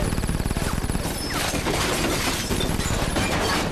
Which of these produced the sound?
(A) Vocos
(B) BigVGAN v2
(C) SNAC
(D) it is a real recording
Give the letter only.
D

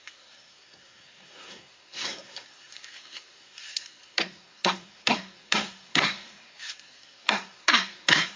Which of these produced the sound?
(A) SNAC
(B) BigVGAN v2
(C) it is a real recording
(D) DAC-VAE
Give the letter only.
A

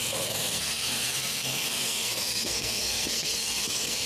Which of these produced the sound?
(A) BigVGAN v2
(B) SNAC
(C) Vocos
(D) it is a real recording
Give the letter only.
B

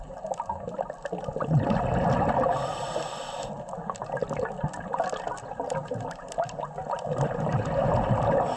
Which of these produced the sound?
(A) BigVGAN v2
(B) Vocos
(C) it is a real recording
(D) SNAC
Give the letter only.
C